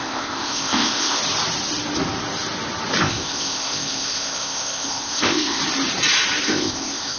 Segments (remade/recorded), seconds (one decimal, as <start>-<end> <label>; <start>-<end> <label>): 0.0-1.2 remade; 1.2-3.0 recorded; 3.0-5.6 remade; 5.6-6.4 recorded; 6.4-7.2 remade